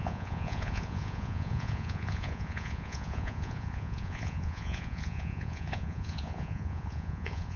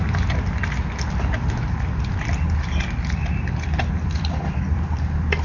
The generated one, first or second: first